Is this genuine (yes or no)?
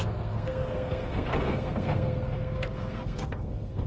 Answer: no